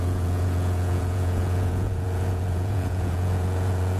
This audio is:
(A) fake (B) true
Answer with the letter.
A